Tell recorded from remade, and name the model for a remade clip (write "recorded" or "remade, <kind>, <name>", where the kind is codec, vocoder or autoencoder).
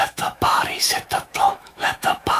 remade, autoencoder, DAC-VAE